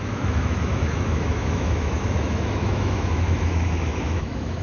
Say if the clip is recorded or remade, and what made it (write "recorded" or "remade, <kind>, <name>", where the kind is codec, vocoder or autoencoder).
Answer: remade, autoencoder, DAC-VAE